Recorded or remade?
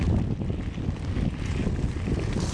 recorded